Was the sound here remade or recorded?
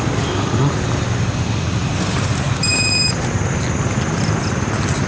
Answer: recorded